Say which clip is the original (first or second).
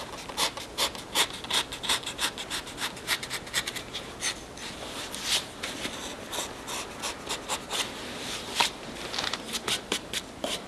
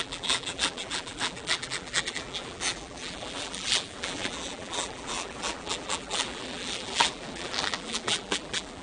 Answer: first